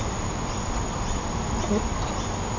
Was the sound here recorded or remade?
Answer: recorded